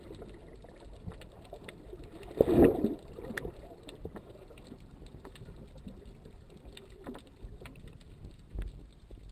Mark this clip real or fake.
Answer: real